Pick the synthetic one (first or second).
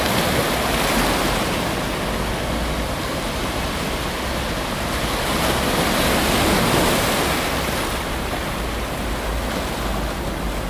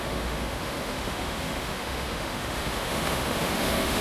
second